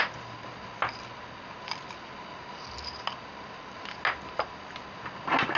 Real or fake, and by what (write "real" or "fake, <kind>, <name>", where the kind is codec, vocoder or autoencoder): real